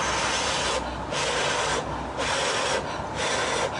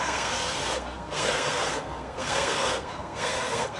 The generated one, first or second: second